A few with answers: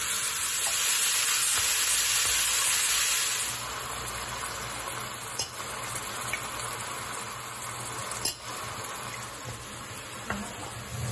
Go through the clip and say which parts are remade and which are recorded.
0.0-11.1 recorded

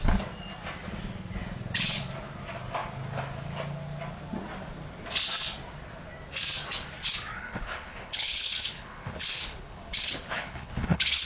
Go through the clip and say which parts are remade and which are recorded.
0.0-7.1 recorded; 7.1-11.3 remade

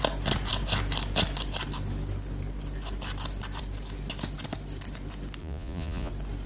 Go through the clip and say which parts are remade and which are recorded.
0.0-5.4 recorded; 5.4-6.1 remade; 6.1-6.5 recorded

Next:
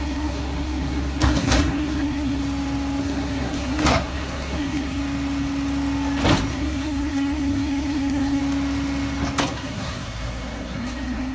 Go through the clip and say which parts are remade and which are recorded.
0.0-2.4 remade; 2.4-3.0 recorded; 3.0-5.0 remade; 5.0-6.5 recorded; 6.5-8.4 remade; 8.4-9.4 recorded; 9.4-11.3 remade

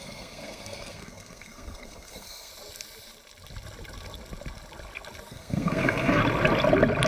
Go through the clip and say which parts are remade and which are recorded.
0.0-2.5 remade; 2.5-5.3 recorded; 5.3-6.2 remade; 6.2-7.1 recorded

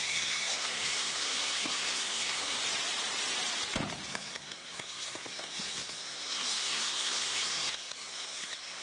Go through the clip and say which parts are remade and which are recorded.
0.0-2.6 remade; 2.6-4.1 recorded; 4.1-8.8 remade